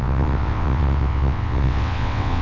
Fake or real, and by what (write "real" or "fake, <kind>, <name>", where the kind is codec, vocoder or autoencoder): fake, vocoder, WaveNeXt